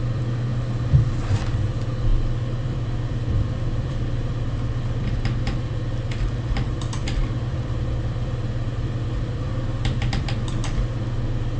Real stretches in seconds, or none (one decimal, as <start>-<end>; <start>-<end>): 0.5-1.0; 10.6-11.6